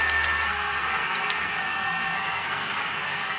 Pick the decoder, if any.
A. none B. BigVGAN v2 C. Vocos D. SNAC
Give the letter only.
D